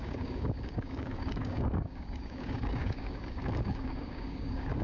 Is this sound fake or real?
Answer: fake